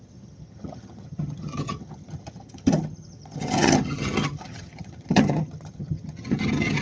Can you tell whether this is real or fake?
fake